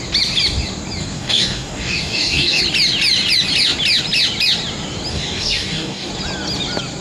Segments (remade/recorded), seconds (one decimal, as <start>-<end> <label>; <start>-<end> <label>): 0.0-1.0 recorded; 1.0-2.6 remade; 2.6-5.1 recorded; 5.1-6.1 remade; 6.1-7.0 recorded